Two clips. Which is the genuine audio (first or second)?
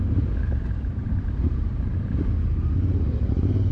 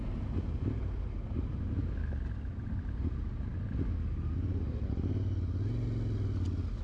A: second